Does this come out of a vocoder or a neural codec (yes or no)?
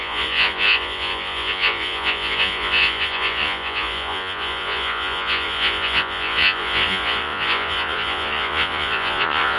yes